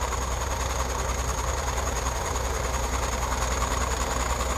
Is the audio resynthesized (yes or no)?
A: yes